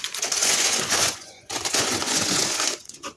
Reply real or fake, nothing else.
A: fake